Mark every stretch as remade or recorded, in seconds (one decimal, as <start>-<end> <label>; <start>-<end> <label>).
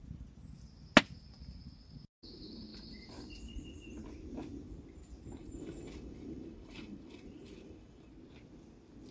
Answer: 0.0-5.4 recorded; 5.4-8.1 remade; 8.1-9.1 recorded